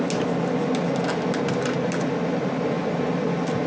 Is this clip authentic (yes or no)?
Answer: yes